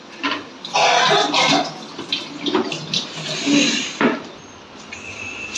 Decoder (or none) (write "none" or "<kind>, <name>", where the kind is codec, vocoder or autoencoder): none